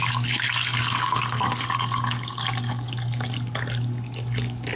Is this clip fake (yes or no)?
yes